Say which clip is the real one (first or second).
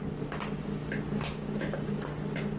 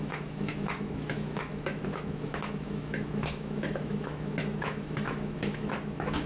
first